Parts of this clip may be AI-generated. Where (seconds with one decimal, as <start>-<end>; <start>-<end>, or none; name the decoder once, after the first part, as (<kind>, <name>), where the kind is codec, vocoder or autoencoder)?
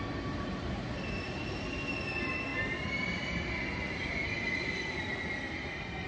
none